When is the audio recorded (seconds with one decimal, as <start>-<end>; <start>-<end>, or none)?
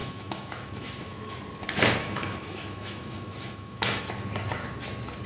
1.4-2.0; 4.1-5.3